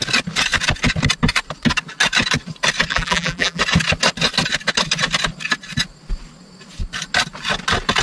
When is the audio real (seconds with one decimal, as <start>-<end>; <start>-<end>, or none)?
0.0-2.9; 3.6-8.0